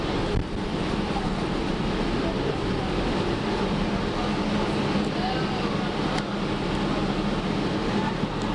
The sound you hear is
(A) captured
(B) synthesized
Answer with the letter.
A